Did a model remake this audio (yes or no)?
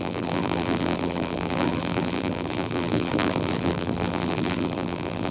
yes